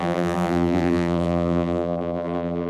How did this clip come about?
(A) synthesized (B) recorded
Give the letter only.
A